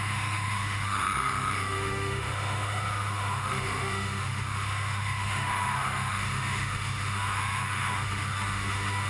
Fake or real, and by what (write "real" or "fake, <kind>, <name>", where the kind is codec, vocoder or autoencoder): fake, autoencoder, DAC-VAE